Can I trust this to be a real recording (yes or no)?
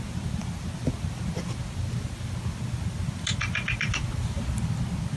yes